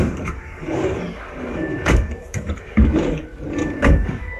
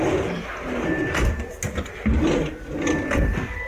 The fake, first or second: first